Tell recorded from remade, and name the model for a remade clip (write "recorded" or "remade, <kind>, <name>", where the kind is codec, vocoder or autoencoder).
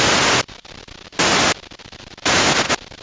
recorded